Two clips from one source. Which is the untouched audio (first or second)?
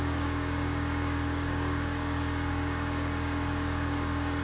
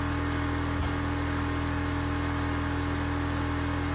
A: second